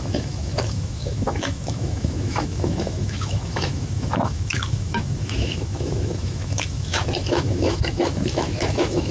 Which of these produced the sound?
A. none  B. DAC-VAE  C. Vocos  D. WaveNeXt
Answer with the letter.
B